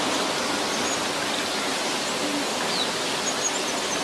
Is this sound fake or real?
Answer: real